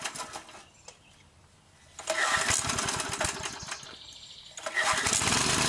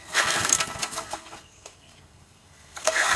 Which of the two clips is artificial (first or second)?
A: second